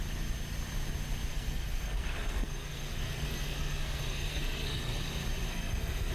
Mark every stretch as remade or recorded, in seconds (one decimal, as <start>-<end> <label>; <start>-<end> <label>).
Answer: 0.0-1.3 recorded; 1.3-5.0 remade; 5.0-5.5 recorded; 5.5-6.1 remade